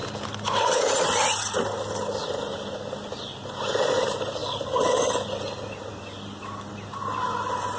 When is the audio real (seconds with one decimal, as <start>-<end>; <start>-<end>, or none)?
0.0-7.8